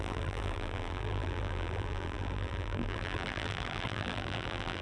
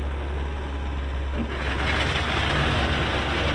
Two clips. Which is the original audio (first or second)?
second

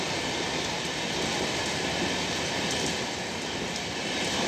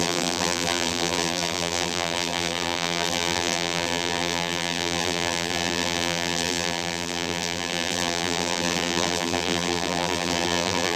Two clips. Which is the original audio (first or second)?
first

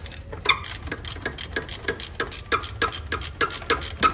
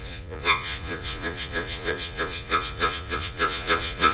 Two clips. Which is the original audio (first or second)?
first